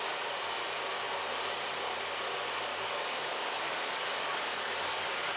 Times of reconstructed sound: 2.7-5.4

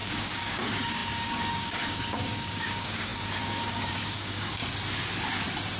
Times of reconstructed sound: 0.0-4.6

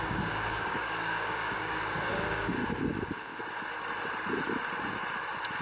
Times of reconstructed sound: 0.0-2.6

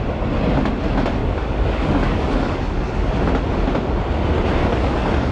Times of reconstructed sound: 1.2-3.1; 4.6-5.3

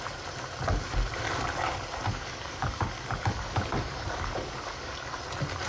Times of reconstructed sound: 2.1-5.2

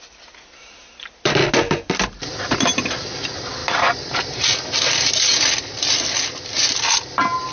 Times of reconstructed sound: none

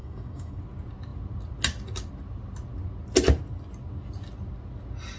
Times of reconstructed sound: 0.0-0.6